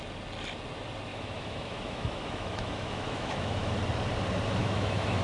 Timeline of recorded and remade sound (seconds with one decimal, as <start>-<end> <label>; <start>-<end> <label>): 0.0-1.1 recorded; 1.1-3.7 remade; 3.7-4.6 recorded; 4.6-5.2 remade